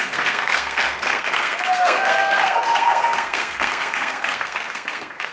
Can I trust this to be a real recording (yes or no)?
no